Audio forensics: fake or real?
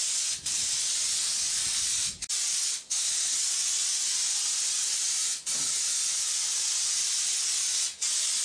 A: real